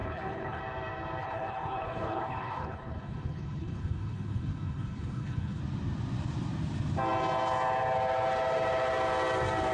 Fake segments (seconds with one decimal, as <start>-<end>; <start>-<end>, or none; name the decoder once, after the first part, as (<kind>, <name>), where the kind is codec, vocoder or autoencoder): 0.0-0.6 (codec, HILCodec); 1.2-5.6